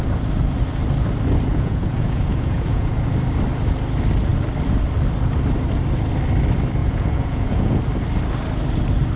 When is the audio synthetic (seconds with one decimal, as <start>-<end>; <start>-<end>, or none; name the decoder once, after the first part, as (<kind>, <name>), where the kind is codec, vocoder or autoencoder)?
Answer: 1.5-3.1 (vocoder, Vocos); 6.8-7.8